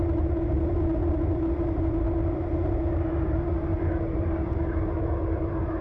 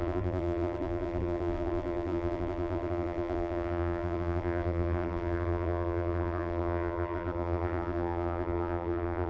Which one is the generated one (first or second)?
second